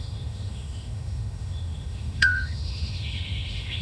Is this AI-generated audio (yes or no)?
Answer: yes